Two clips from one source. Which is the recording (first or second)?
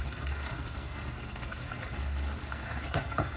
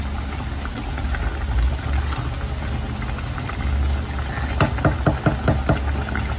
second